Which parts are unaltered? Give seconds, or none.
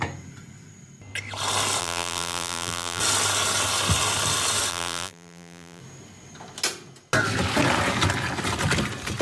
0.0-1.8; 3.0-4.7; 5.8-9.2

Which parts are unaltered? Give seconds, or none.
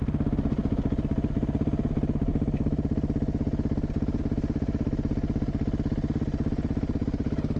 0.0-7.6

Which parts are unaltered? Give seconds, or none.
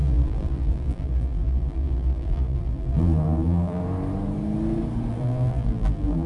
3.8-5.1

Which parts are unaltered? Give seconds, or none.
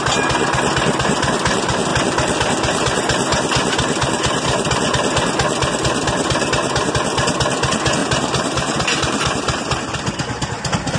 0.0-8.0; 10.0-11.0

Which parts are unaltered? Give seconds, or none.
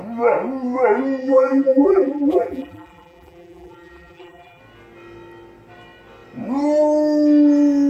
0.0-1.2; 4.6-7.9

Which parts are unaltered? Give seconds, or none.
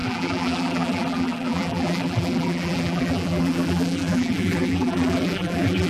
none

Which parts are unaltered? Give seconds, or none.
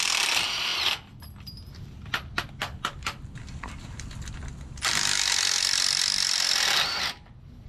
0.0-7.7